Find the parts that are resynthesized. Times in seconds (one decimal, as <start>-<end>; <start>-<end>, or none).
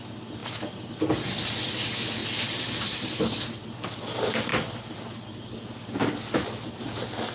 2.2-3.2